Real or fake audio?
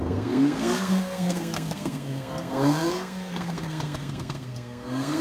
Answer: fake